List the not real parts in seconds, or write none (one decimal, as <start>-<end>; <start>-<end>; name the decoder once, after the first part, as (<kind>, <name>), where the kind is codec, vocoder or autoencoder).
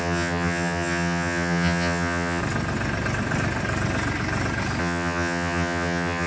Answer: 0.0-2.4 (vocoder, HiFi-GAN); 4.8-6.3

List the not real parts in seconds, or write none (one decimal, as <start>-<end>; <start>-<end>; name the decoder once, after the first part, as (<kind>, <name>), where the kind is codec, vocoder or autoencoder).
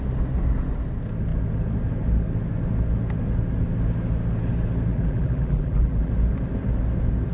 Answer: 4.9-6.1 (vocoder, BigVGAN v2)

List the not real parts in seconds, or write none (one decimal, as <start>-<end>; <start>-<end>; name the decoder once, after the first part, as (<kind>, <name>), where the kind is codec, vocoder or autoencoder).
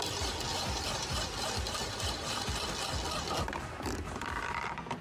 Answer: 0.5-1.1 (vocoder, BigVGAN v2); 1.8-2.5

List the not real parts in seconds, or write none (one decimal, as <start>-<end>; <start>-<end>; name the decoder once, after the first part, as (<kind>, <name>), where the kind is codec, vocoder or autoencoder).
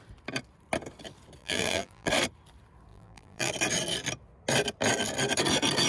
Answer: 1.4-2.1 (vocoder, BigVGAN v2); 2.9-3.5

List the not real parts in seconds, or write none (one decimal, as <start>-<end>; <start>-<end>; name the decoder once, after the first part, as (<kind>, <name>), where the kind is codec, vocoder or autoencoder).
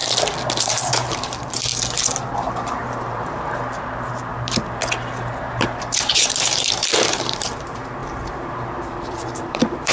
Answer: 0.7-1.7 (vocoder, BigVGAN v2); 2.6-4.3; 5.4-9.9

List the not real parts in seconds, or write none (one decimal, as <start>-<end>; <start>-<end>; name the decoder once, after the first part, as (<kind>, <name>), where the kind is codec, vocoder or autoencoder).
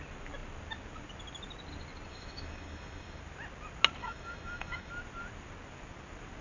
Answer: 2.1-3.2 (autoencoder, DAC-VAE); 4.0-4.9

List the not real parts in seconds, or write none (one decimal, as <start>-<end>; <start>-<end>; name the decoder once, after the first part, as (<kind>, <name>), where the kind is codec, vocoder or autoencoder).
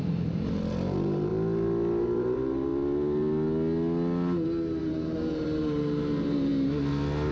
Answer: 0.0-1.3 (vocoder, BigVGAN v2); 2.0-2.7; 4.8-6.5